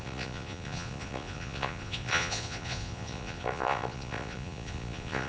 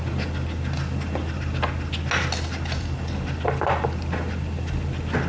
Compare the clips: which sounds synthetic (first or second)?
first